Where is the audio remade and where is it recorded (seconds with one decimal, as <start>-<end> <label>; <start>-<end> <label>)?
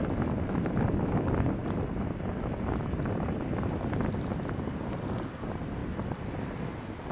0.0-7.1 recorded